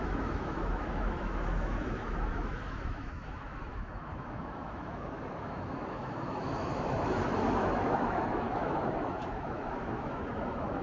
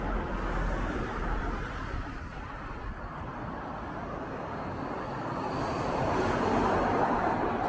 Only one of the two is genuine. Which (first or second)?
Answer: second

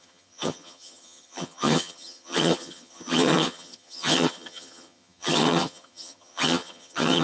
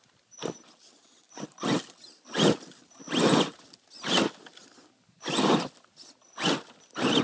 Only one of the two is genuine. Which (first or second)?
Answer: second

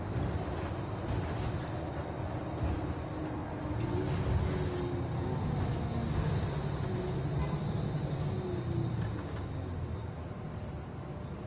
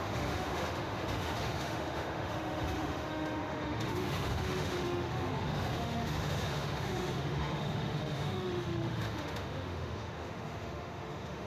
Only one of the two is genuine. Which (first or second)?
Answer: first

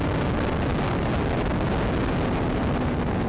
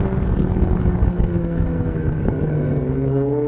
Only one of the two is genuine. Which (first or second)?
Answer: first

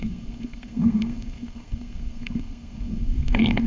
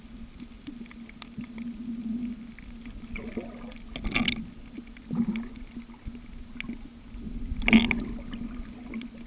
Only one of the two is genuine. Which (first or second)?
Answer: second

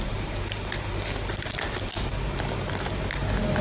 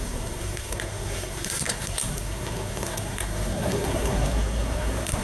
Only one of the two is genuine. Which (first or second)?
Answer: first